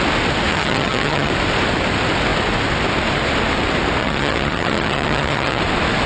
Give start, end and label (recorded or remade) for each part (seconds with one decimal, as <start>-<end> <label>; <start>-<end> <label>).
0.0-0.5 recorded; 0.5-1.3 remade; 1.3-4.0 recorded; 4.0-5.6 remade; 5.6-6.1 recorded